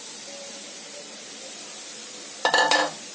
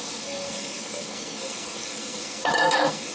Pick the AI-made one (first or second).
second